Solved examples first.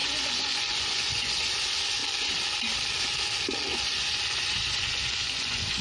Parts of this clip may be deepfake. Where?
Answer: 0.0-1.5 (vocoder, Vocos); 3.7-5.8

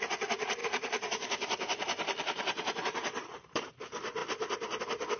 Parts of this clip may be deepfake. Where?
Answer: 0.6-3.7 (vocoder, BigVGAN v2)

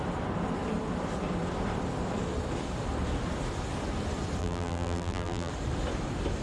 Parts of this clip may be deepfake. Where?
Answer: 4.4-5.5 (vocoder, BigVGAN v2)